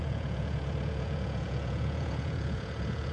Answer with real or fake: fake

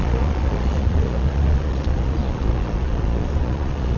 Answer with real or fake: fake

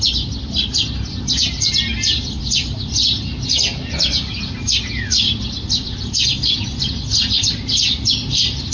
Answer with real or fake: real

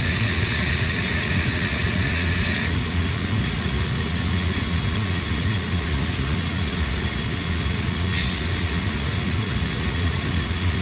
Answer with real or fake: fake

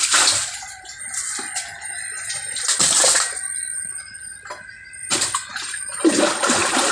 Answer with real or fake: real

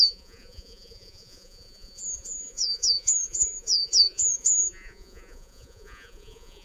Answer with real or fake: fake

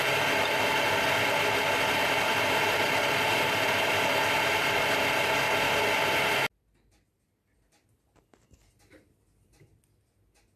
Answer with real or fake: real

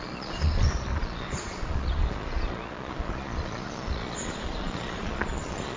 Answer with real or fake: fake